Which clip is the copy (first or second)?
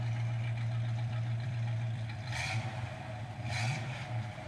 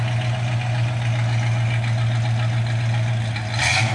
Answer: first